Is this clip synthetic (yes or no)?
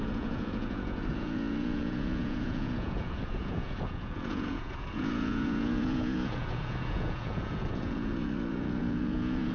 yes